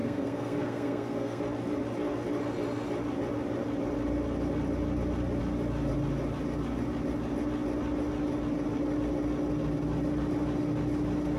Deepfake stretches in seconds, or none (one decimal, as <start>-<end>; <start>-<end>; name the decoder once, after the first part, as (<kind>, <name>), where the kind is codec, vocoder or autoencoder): 0.0-1.4 (codec, SNAC)